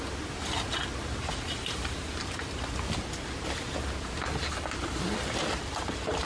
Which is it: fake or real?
real